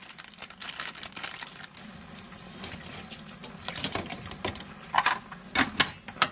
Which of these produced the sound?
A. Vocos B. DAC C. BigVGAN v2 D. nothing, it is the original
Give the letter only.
D